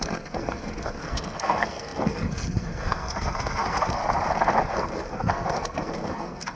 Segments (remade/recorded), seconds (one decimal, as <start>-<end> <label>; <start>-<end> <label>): 0.0-4.0 remade; 4.0-4.7 recorded; 4.7-6.6 remade